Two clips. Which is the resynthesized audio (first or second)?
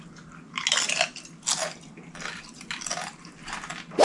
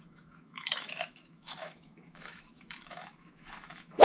second